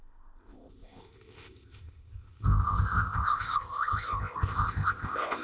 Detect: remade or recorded remade